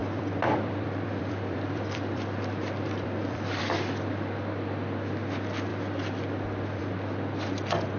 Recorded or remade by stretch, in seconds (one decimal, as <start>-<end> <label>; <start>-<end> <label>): 0.0-3.6 remade; 3.6-8.0 recorded